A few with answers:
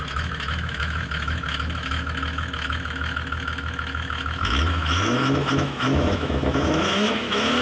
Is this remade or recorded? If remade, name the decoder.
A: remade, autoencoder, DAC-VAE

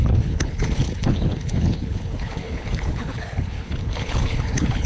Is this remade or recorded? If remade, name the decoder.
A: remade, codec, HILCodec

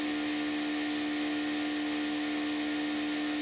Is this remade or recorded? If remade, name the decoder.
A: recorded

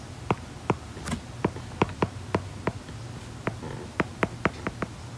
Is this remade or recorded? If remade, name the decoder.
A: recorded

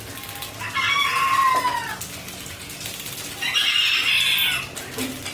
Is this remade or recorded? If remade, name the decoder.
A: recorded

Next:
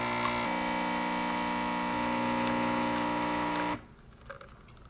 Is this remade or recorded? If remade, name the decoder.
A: recorded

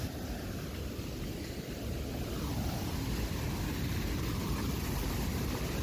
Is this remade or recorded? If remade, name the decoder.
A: recorded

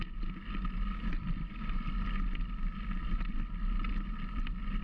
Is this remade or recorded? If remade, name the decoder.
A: recorded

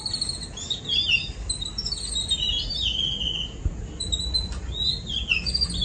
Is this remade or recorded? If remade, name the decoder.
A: recorded